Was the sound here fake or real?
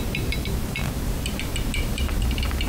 fake